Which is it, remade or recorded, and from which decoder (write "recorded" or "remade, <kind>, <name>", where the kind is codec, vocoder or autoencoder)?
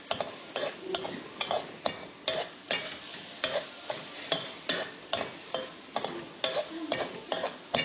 recorded